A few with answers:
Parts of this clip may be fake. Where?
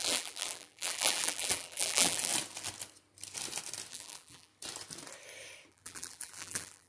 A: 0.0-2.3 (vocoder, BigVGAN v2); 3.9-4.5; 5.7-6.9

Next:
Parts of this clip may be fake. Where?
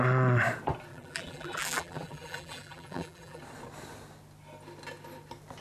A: 0.9-3.4 (vocoder, BigVGAN v2)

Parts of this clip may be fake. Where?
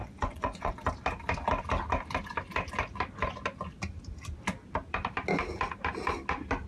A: 0.0-0.7 (vocoder, Vocos)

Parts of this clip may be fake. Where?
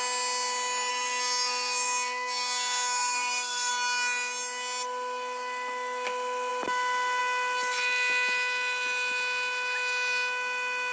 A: 0.9-3.7 (codec, SNAC)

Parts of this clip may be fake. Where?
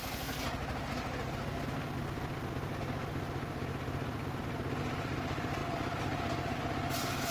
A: none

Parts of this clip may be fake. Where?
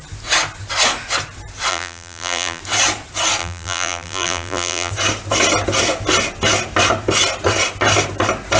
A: 1.7-2.6 (vocoder, BigVGAN v2); 3.4-4.9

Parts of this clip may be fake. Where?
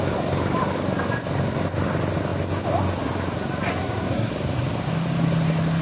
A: 3.7-4.3 (codec, SNAC)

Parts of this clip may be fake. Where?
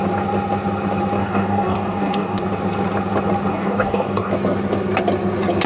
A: 1.2-2.4 (codec, DAC); 3.5-4.3